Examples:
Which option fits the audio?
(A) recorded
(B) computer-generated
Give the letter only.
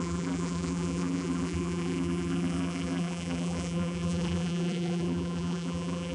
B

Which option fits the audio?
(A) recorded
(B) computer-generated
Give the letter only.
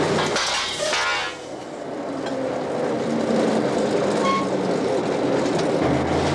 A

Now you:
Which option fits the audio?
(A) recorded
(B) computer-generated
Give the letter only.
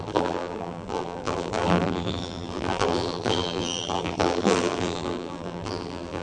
B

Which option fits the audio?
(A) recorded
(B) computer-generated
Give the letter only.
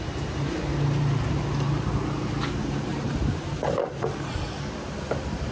A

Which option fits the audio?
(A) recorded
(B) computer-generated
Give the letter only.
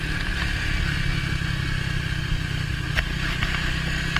A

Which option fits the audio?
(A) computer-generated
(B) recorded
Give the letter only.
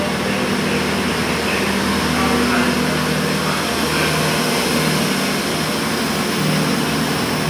B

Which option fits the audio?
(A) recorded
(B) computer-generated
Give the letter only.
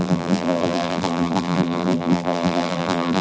B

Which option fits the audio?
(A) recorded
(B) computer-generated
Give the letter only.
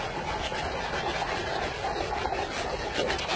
A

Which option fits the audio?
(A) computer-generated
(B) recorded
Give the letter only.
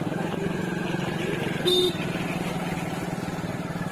B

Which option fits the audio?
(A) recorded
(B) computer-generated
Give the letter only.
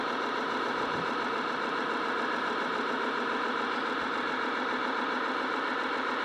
B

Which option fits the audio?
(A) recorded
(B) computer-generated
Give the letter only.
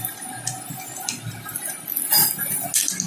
A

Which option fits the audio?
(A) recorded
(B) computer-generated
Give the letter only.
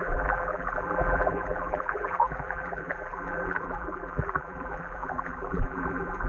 B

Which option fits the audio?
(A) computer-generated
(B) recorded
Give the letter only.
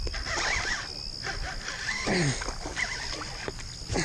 B